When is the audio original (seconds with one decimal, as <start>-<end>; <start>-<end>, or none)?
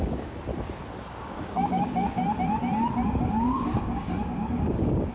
0.5-1.1; 2.2-3.1